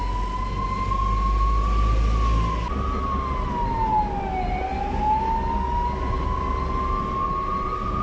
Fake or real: real